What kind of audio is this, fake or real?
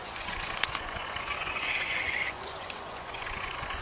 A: fake